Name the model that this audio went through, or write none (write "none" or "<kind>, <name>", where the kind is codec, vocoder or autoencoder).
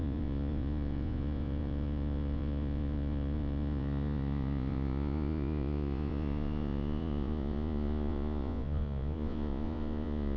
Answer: vocoder, Vocos